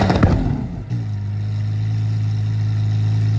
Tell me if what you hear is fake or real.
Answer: real